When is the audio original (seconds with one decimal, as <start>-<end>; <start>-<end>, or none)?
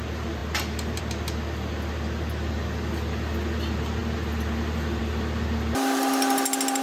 0.0-6.8